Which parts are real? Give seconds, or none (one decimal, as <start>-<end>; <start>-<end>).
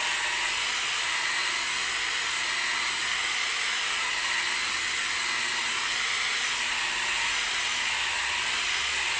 0.0-9.2